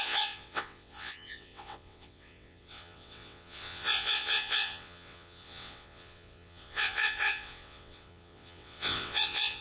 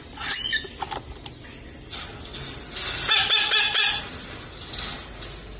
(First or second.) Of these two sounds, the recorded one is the second